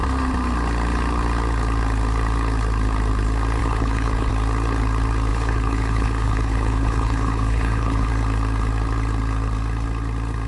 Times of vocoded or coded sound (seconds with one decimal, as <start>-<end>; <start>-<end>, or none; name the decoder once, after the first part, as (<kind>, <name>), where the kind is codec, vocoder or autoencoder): 3.6-4.3 (codec, HILCodec); 5.3-8.1